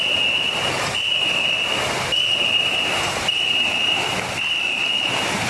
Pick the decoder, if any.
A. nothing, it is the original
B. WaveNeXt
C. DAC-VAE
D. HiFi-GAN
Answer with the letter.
A